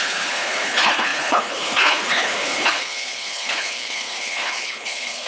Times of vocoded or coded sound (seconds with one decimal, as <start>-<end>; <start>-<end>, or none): 0.0-5.3